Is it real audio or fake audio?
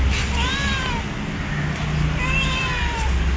real